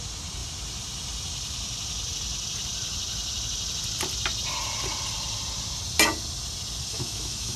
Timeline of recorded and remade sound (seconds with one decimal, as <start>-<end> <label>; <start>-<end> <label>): 0.0-6.9 recorded; 6.9-7.6 remade